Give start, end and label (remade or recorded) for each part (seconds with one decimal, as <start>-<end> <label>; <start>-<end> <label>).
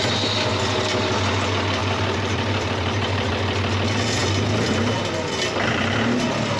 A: 0.0-1.8 recorded; 1.8-3.3 remade; 3.3-6.6 recorded